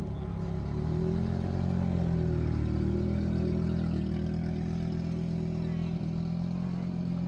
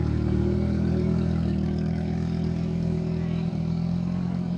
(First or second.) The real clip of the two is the first